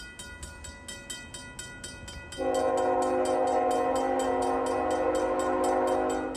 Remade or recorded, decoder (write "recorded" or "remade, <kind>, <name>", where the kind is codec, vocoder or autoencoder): recorded